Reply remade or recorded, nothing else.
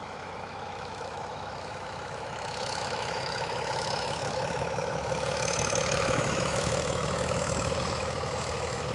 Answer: remade